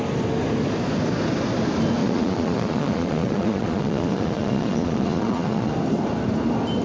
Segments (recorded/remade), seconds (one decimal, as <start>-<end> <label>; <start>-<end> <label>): 0.0-2.0 recorded; 2.0-5.7 remade; 5.7-6.8 recorded